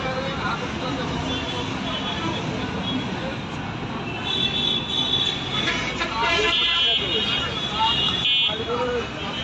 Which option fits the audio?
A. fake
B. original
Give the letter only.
B